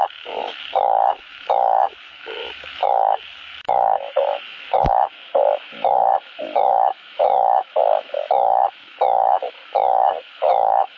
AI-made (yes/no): yes